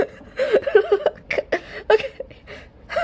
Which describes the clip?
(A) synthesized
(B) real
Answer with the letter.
B